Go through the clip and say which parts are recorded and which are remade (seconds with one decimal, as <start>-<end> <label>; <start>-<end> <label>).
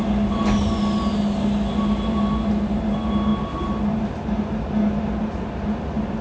0.0-6.2 recorded